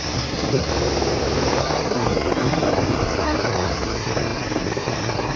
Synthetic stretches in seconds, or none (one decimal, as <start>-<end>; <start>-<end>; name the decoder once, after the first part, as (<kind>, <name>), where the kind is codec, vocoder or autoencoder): 0.0-0.7 (codec, SNAC); 1.6-5.4